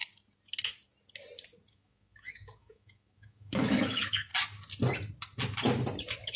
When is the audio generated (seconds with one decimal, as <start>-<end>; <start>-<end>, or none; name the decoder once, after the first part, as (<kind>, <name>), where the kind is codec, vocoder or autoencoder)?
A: 1.7-4.3 (autoencoder, DAC-VAE)